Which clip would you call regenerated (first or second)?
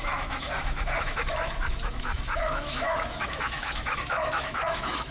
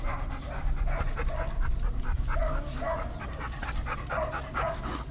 first